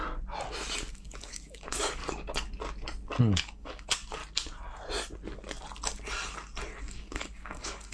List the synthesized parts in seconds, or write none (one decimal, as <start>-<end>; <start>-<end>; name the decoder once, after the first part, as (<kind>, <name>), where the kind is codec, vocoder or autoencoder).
0.9-2.0 (codec, DAC); 3.2-4.2; 6.8-7.9